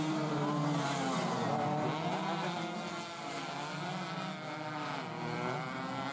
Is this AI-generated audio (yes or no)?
no